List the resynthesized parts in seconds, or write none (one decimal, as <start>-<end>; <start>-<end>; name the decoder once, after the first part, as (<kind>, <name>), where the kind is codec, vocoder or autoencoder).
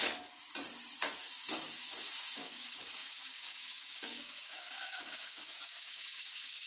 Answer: 1.2-6.7 (codec, DAC)